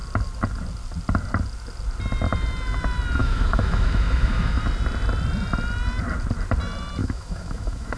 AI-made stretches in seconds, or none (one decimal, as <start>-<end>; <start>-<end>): 3.2-4.6; 7.0-8.0